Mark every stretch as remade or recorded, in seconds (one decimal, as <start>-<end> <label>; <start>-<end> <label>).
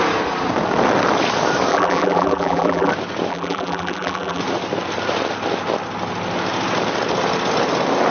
0.0-1.7 recorded; 1.7-2.9 remade; 2.9-3.3 recorded; 3.3-4.4 remade; 4.4-8.1 recorded